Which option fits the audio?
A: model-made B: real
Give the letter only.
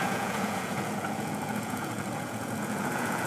A